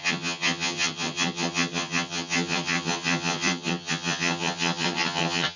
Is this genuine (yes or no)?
no